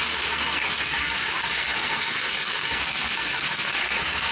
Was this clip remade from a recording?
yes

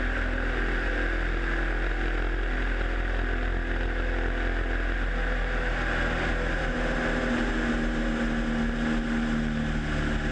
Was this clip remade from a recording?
no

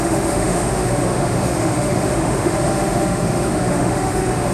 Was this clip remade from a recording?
yes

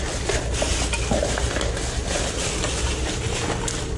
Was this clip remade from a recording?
no